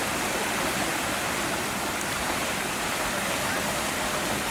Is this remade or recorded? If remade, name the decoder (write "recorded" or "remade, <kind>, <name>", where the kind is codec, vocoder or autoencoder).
recorded